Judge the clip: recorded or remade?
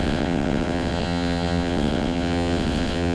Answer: remade